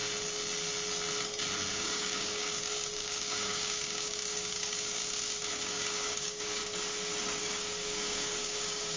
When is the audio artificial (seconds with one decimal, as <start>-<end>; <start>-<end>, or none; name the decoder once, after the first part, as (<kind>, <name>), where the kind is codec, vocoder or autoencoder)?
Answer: 1.7-5.0 (codec, DAC); 5.5-6.6; 7.4-9.0